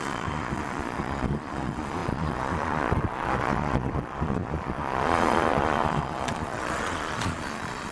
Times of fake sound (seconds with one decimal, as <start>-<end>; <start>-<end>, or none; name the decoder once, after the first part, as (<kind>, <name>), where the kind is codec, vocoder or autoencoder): 0.0-7.9 (vocoder, Vocos)